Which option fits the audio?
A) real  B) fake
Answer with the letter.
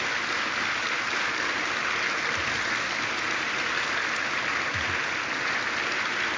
A